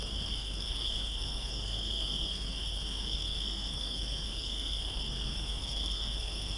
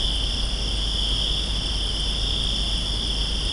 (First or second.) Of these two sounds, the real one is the second